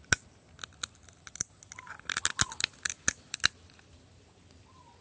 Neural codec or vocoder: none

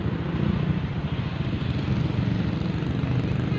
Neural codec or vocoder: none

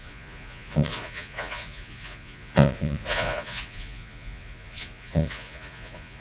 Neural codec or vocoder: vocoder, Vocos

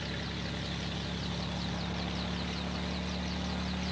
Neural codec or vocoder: none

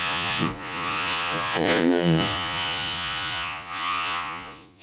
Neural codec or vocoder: vocoder, Vocos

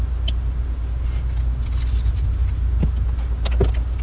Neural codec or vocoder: none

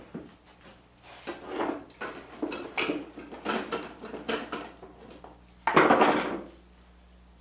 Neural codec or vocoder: none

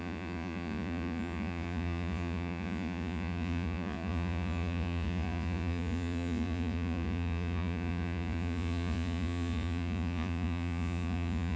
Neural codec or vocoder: vocoder, Vocos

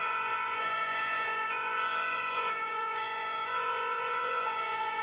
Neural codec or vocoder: vocoder, Vocos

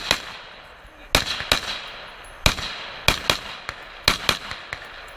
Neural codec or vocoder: none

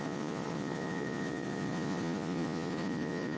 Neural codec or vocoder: vocoder, Vocos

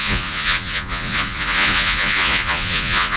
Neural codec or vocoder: vocoder, Vocos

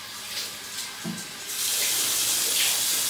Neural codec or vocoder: none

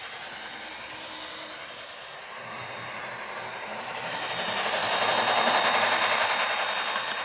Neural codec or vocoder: none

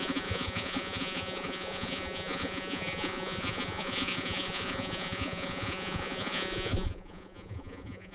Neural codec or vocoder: vocoder, Vocos